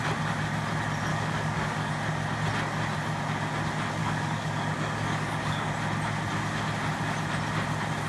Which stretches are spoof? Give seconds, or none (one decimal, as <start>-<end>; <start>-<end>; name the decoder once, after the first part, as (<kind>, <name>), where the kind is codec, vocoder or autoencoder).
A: 1.1-1.9 (codec, DAC); 4.0-5.7